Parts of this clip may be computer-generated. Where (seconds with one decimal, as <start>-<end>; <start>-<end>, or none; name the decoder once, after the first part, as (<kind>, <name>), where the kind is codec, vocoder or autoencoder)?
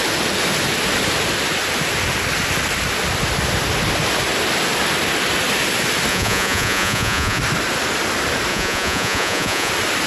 6.1-7.4 (vocoder, Vocos); 8.5-9.7